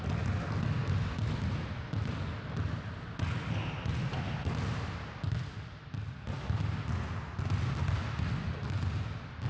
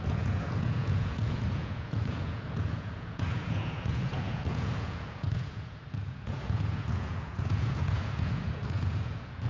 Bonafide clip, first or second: first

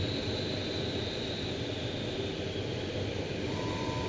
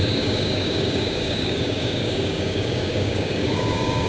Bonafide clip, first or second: first